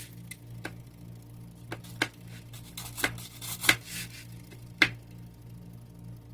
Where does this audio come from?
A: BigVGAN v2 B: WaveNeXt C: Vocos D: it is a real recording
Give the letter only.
D